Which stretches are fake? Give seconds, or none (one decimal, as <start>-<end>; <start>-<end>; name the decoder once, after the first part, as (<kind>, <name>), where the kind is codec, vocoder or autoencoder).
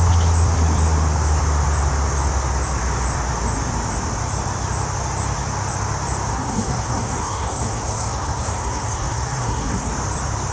6.3-9.9 (codec, SNAC)